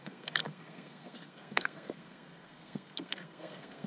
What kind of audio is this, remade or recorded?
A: remade